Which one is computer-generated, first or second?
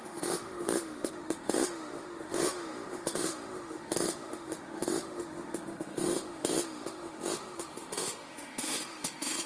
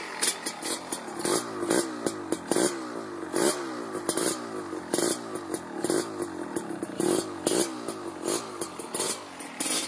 first